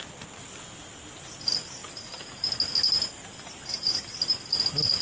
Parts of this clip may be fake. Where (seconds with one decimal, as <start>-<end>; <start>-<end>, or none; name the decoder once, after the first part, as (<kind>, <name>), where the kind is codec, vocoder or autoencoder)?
none